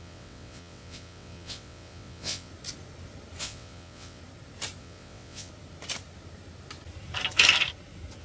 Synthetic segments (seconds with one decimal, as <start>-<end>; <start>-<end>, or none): 0.0-2.5; 3.4-4.2; 4.8-5.5